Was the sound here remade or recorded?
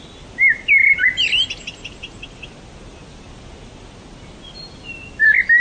recorded